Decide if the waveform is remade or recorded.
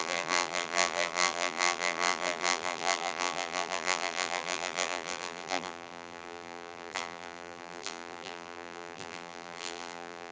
remade